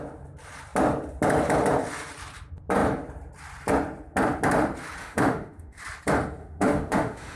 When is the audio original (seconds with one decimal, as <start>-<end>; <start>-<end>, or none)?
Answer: 0.0-5.0; 5.8-6.4